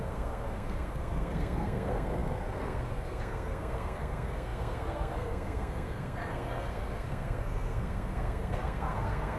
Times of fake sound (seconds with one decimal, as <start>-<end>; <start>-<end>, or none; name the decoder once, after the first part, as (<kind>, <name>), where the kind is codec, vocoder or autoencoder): 0.0-9.4 (codec, SNAC)